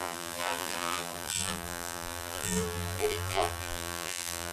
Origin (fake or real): fake